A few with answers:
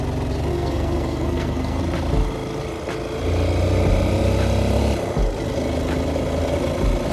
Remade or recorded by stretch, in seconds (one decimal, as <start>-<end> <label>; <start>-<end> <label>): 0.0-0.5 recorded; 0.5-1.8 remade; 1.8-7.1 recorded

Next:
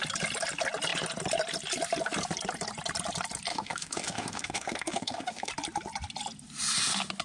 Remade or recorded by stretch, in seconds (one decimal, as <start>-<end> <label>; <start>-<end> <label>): 0.0-3.5 recorded; 3.5-5.5 remade; 5.5-7.2 recorded

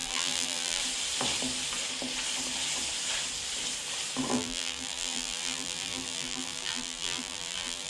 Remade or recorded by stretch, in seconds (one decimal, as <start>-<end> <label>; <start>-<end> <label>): 0.0-0.8 remade; 0.8-4.3 recorded; 4.3-7.9 remade

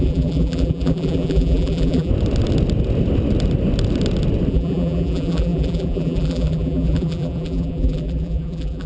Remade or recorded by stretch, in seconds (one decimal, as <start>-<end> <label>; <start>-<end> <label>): 0.0-2.1 remade; 2.1-4.5 recorded; 4.5-8.9 remade